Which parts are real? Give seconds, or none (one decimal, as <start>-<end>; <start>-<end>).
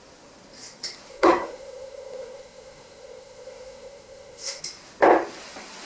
0.0-1.1; 4.6-5.8